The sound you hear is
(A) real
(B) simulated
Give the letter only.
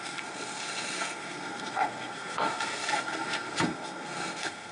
B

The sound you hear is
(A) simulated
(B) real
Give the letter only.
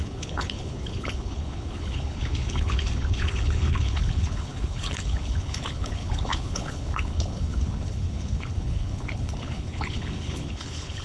A